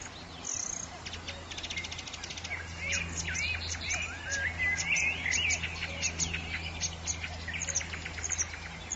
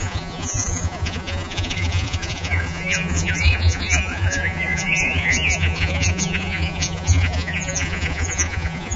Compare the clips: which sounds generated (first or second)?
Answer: second